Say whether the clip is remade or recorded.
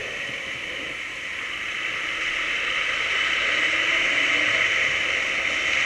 recorded